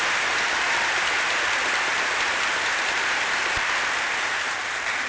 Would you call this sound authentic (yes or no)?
yes